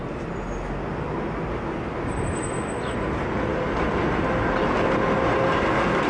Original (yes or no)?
yes